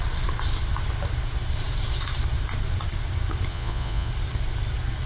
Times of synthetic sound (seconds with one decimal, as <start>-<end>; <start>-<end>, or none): 3.5-4.1

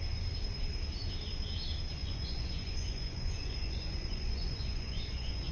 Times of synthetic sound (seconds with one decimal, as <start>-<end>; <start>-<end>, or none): 2.0-5.5

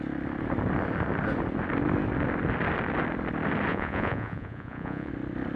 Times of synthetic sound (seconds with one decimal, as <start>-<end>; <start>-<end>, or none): 3.7-5.1

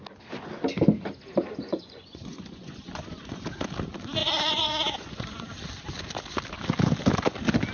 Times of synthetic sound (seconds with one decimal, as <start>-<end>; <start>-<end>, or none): 1.7-3.4; 4.2-5.4

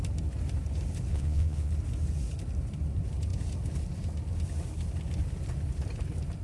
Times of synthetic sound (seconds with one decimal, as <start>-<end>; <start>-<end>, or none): 1.1-1.7

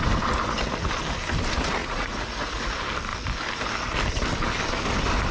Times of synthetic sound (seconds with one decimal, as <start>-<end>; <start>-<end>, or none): 1.8-2.7